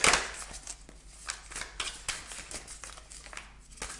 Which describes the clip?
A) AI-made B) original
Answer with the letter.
B